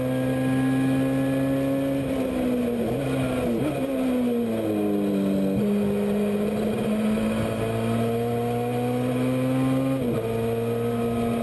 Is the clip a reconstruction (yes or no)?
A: no